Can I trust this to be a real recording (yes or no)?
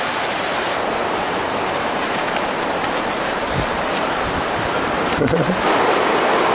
no